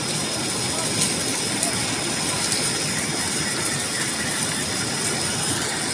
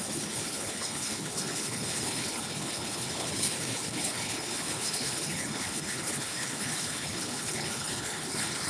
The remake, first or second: second